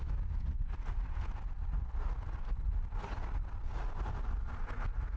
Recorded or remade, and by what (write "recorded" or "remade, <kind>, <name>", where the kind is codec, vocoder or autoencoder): recorded